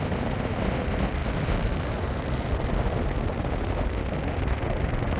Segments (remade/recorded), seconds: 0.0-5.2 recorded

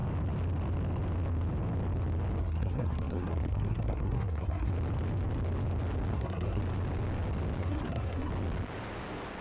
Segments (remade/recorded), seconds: 0.0-2.4 recorded; 2.4-4.7 remade; 4.7-6.1 recorded; 6.1-6.6 remade; 6.6-7.6 recorded; 7.6-8.3 remade; 8.3-9.4 recorded